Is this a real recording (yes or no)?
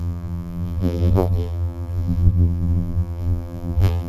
no